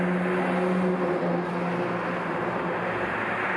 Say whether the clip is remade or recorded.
recorded